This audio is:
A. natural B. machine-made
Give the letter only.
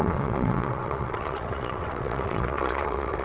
B